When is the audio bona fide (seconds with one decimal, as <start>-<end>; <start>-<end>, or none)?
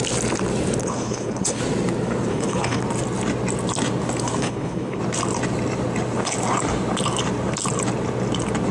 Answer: 0.0-0.8; 1.6-2.3; 2.8-4.4; 5.0-8.7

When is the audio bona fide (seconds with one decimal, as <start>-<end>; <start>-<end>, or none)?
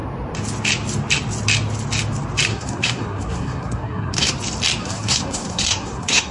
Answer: 0.0-2.5; 4.3-4.8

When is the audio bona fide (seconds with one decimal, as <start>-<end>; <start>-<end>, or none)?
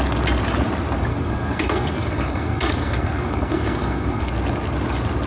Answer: 0.0-1.1; 4.3-5.3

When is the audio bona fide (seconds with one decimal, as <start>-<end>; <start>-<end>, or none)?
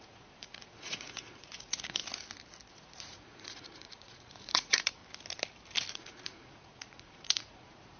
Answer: 2.0-2.7; 5.0-5.9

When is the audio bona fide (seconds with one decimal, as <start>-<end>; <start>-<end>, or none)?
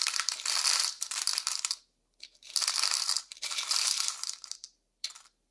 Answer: none